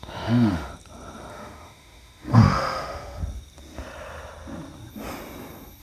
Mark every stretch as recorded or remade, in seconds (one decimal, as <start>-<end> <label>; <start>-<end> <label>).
0.0-0.7 remade; 0.7-1.3 recorded; 1.3-3.2 remade; 3.2-5.8 recorded